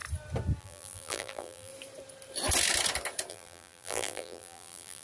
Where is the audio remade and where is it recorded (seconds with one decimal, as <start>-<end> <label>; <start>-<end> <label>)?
0.0-0.6 recorded; 0.6-1.7 remade; 1.7-3.3 recorded; 3.3-5.0 remade